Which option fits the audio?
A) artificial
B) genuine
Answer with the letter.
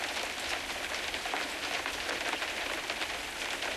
B